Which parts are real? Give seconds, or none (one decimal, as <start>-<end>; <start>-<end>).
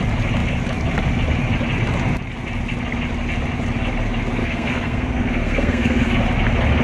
0.0-4.4; 6.2-6.8